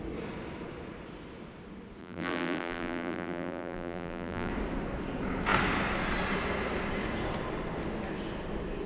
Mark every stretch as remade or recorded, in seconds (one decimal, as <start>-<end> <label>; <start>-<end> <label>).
0.0-2.0 recorded; 2.0-4.5 remade; 4.5-8.9 recorded